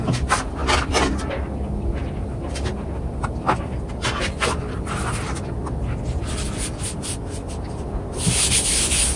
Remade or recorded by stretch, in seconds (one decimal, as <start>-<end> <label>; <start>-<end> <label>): 0.0-9.2 recorded